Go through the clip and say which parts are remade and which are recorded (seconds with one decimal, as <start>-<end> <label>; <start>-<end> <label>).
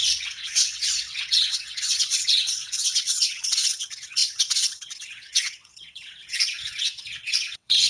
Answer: 0.0-7.9 remade